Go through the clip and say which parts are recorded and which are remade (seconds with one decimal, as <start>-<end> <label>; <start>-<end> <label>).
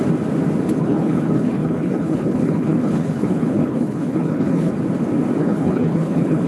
0.0-0.8 recorded; 0.8-4.7 remade; 4.7-5.4 recorded; 5.4-6.5 remade